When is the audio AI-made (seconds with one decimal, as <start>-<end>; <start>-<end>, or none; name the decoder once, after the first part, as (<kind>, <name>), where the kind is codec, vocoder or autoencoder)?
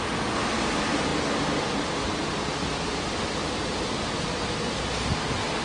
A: none